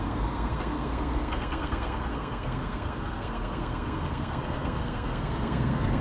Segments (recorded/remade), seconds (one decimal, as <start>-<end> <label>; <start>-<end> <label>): 0.0-6.0 remade